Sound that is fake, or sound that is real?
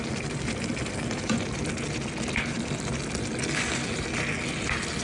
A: real